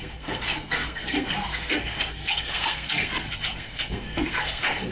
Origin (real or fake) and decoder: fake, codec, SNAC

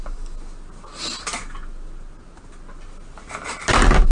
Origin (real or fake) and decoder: real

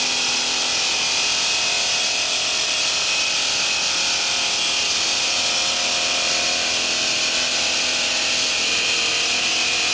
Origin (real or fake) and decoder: real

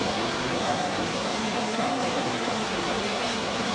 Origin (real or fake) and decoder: fake, codec, SNAC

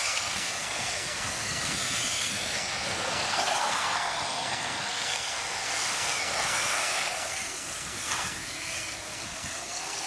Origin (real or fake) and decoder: fake, codec, SNAC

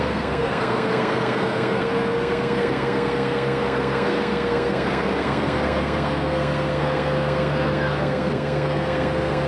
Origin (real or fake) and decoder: fake, codec, SNAC